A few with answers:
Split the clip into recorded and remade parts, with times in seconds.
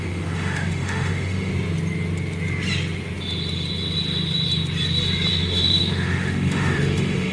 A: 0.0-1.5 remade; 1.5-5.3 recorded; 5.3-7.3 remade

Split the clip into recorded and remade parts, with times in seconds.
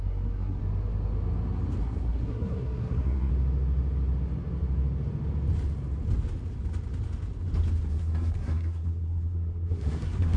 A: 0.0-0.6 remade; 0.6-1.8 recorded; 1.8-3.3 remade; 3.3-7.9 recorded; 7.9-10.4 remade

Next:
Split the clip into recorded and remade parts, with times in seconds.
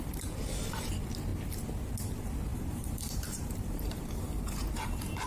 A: 0.0-2.5 recorded; 2.5-5.3 remade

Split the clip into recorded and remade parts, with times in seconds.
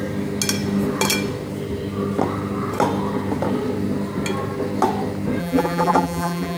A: 0.0-5.4 recorded; 5.4-6.6 remade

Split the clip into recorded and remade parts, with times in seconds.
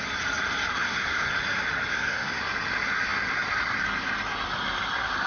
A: 0.0-0.7 recorded; 0.7-1.3 remade; 1.3-1.9 recorded; 1.9-2.4 remade; 2.4-5.3 recorded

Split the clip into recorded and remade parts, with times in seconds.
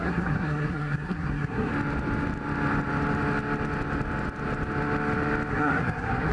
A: 0.0-1.7 remade; 1.7-5.5 recorded; 5.5-6.3 remade